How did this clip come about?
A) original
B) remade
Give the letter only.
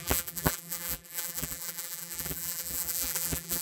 B